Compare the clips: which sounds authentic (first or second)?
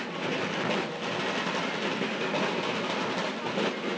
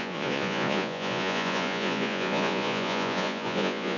first